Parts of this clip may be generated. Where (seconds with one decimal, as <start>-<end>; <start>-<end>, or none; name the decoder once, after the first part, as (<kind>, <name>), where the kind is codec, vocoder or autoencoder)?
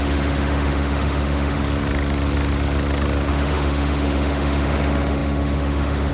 0.0-1.6 (autoencoder, DAC-VAE); 3.3-6.1